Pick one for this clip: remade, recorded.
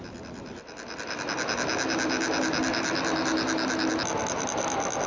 recorded